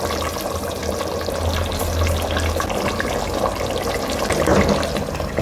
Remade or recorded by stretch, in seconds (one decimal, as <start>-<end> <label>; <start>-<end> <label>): 0.0-5.4 recorded